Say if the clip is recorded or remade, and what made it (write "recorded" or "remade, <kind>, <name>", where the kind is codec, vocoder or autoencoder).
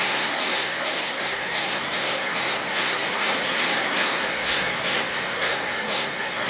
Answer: remade, codec, SNAC